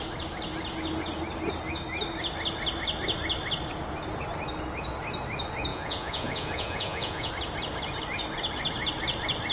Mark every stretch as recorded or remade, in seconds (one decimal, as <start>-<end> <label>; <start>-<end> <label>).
0.0-5.7 recorded; 5.7-7.3 remade; 7.3-9.5 recorded